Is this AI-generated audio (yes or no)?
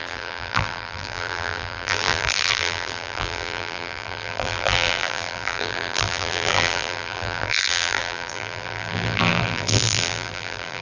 yes